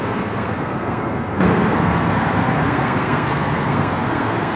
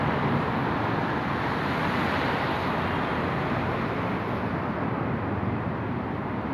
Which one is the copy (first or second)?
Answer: first